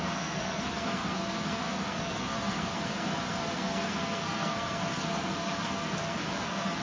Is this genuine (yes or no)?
no